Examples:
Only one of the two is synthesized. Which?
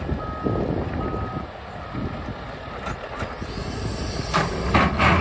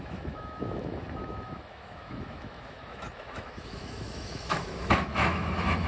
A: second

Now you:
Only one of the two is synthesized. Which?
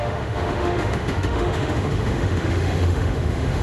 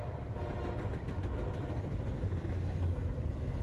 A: first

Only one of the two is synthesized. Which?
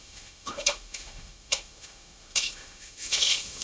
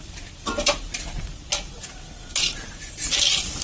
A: first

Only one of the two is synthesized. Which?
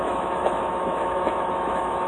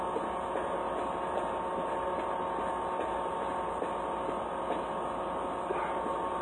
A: first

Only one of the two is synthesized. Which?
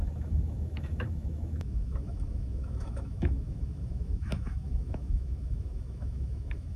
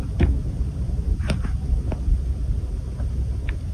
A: first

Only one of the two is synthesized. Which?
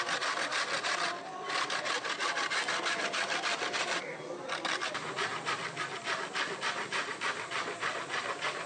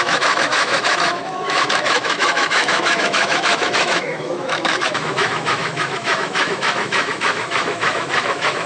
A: second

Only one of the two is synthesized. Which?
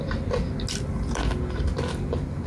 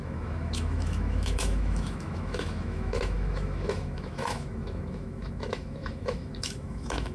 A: second